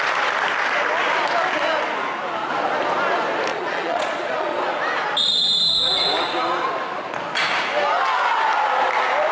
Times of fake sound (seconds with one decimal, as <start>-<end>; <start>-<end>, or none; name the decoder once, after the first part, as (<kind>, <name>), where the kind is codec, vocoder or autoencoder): 3.5-4.6 (vocoder, Vocos)

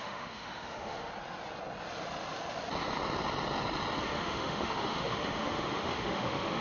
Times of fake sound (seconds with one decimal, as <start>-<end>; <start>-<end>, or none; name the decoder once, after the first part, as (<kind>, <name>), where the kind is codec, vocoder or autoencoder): 0.0-1.1 (autoencoder, DAC-VAE); 4.0-6.6

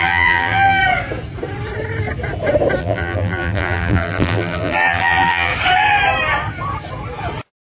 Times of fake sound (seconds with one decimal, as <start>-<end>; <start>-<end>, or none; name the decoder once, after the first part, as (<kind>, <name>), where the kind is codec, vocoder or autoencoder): 0.0-0.8 (vocoder, BigVGAN v2); 2.8-5.5

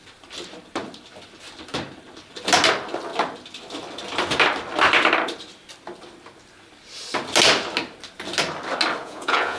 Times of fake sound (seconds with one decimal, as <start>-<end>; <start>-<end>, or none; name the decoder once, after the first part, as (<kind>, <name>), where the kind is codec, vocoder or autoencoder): 9.0-9.6 (vocoder, Vocos)

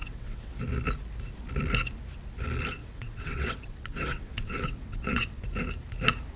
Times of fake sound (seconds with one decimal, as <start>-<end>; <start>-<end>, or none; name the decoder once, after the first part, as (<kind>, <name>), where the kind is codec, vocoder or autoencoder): 0.0-0.5 (vocoder, WaveNeXt); 2.8-5.4

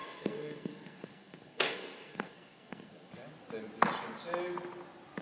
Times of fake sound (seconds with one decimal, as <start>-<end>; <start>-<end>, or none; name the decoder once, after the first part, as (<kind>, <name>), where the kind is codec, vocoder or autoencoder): 0.0-3.1 (codec, SNAC)

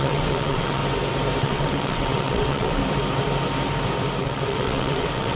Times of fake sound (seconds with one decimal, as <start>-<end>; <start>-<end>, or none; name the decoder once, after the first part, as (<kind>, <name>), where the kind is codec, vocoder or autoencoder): 0.0-0.8 (vocoder, WaveNeXt); 1.4-2.8; 4.2-5.4

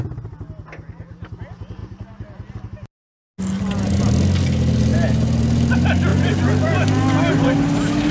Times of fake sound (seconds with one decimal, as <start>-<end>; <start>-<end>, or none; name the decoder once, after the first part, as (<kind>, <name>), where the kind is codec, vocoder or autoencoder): none